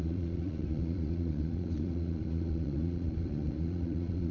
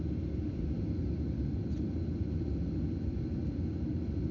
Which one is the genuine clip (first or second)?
second